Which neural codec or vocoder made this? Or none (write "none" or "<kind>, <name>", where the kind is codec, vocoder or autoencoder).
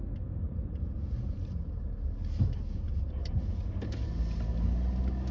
none